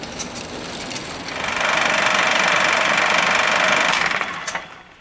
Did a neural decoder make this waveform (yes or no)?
no